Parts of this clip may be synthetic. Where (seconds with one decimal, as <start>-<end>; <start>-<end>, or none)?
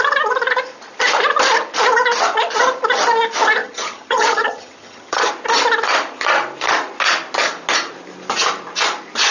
3.6-5.3